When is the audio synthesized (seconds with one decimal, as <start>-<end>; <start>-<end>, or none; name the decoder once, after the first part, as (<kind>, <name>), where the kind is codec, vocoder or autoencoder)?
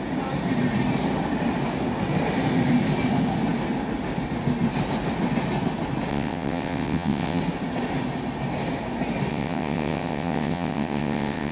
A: 6.1-7.4 (vocoder, WaveNeXt); 9.3-11.5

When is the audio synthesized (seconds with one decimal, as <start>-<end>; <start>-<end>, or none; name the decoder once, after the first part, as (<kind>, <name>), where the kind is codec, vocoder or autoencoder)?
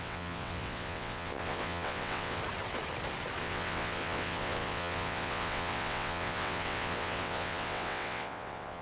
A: 0.0-2.4 (vocoder, WaveNeXt); 3.4-8.8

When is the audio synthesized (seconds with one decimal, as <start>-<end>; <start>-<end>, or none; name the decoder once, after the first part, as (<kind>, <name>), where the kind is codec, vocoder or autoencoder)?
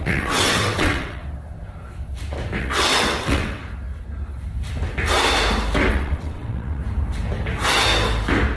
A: 0.0-1.2 (vocoder, WaveNeXt); 2.6-3.6; 5.9-6.8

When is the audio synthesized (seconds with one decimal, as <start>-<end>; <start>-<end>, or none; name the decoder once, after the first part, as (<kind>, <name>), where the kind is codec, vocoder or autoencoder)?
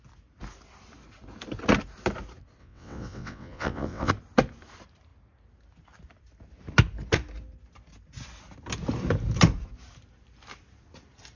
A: 2.6-4.1 (vocoder, WaveNeXt)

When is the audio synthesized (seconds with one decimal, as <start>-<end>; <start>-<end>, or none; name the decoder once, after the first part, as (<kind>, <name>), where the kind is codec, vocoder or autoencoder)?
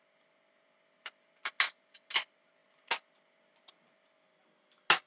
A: none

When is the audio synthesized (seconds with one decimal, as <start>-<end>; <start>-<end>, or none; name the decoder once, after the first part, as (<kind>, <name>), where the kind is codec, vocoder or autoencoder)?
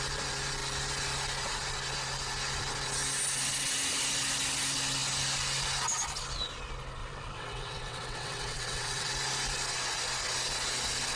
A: 7.0-9.1 (vocoder, WaveNeXt)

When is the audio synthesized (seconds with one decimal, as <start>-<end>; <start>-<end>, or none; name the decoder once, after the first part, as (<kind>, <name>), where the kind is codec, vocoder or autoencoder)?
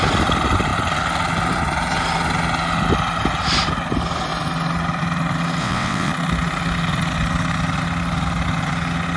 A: 5.6-6.1 (vocoder, WaveNeXt)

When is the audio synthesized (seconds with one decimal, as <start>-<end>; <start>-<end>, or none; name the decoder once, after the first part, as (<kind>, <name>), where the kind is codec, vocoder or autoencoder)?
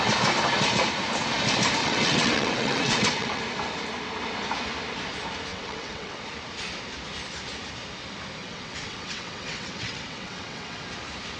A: 1.8-3.4 (vocoder, WaveNeXt); 5.5-6.1; 8.4-10.8